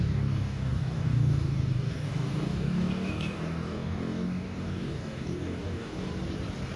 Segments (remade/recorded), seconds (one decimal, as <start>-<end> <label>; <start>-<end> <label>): 0.0-6.1 remade; 6.1-6.8 recorded